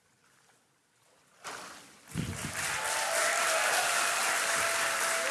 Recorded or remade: recorded